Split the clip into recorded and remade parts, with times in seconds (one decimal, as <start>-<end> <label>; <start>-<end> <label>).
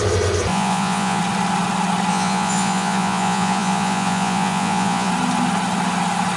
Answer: 0.0-0.5 recorded; 0.5-1.2 remade; 1.2-2.1 recorded; 2.1-5.1 remade; 5.1-6.4 recorded